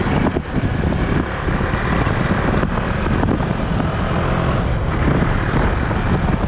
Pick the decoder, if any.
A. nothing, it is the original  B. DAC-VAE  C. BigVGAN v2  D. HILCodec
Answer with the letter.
A